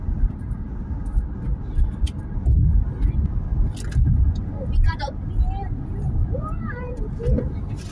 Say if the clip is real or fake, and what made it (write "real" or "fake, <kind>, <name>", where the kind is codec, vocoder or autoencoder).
real